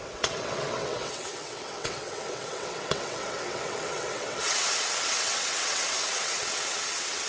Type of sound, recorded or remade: remade